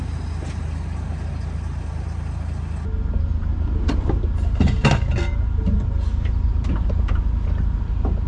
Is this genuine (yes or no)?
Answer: yes